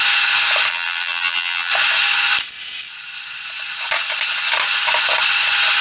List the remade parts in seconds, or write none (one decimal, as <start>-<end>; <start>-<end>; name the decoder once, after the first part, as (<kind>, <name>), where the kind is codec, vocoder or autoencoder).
0.7-1.7 (vocoder, BigVGAN v2)